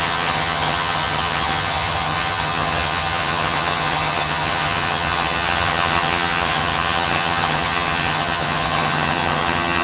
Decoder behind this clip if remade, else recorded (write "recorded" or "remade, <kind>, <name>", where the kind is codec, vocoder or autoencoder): remade, vocoder, HiFi-GAN